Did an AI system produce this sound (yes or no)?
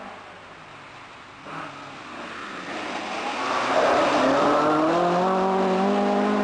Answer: no